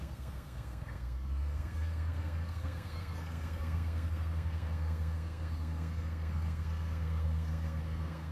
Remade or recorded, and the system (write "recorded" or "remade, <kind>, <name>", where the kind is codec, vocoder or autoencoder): remade, codec, SNAC